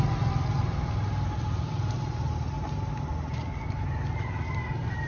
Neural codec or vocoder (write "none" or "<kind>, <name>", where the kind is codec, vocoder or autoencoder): none